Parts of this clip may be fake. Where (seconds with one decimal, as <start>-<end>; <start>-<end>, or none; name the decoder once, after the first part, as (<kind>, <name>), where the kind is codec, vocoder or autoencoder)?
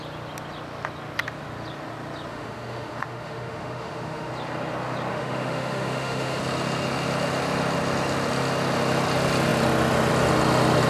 2.3-4.3 (autoencoder, DAC-VAE); 5.1-6.4